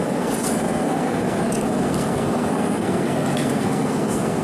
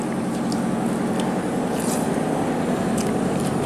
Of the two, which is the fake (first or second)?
first